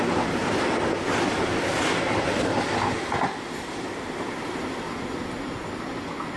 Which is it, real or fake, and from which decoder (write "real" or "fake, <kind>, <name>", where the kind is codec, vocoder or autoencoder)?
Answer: real